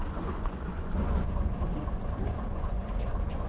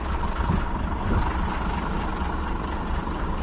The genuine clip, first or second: second